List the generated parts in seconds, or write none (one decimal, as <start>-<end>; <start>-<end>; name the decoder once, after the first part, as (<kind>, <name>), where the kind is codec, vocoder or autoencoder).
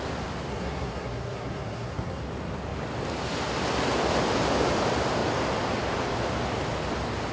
0.5-2.2 (codec, SNAC)